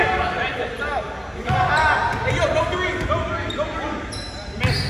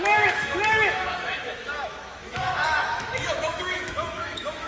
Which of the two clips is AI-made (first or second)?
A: second